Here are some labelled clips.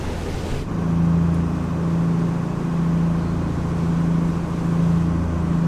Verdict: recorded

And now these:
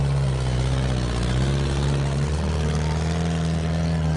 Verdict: recorded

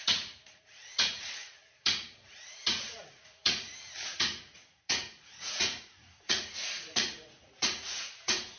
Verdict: remade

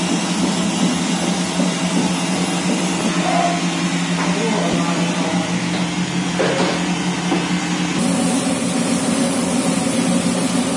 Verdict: recorded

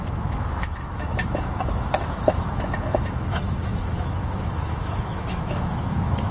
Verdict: remade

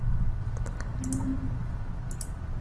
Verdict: recorded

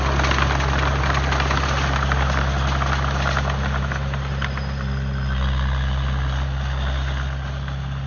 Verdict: recorded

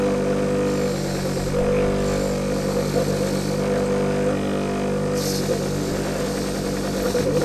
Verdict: recorded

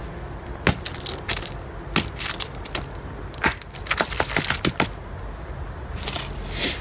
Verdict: recorded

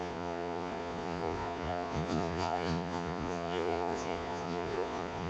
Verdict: remade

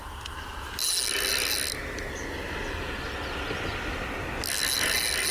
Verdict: recorded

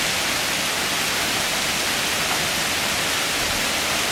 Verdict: recorded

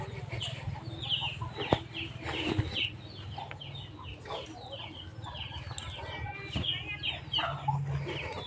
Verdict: recorded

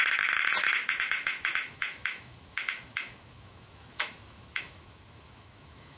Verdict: remade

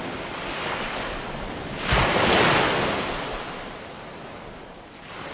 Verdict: recorded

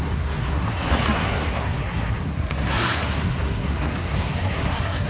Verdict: remade